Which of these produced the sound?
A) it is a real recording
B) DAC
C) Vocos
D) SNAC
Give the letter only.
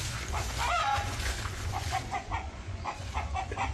C